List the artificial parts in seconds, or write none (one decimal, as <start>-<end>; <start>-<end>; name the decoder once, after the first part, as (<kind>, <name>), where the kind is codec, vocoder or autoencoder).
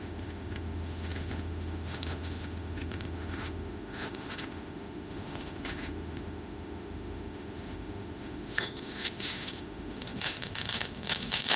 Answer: 0.0-11.6 (autoencoder, DAC-VAE)